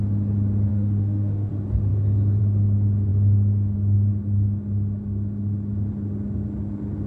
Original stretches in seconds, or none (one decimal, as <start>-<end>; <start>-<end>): 0.0-0.7; 1.5-7.1